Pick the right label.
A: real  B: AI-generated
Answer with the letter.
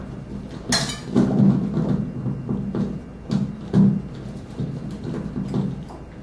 A